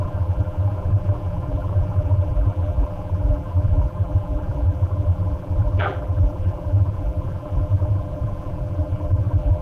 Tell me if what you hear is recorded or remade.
remade